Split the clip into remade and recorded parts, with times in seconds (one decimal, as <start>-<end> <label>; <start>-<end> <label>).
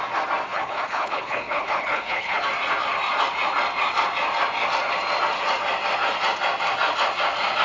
0.0-0.5 recorded; 0.5-2.4 remade; 2.4-7.6 recorded